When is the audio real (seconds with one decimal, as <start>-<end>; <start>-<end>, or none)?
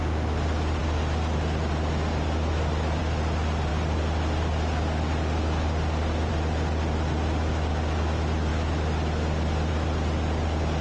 0.0-10.8